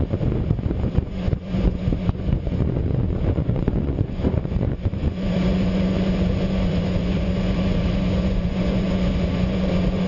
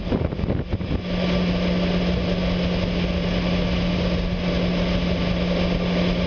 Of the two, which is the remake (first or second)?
first